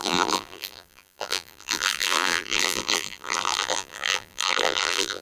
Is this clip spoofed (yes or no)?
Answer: yes